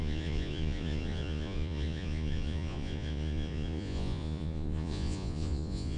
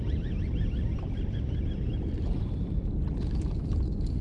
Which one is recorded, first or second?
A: second